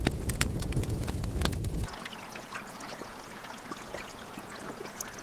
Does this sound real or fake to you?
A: fake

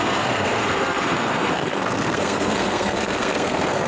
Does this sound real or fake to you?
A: fake